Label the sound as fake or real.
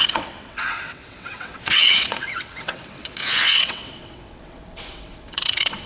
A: fake